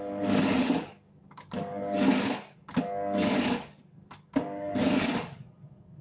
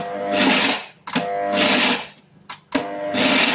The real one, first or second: second